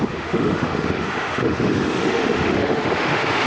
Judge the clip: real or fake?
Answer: fake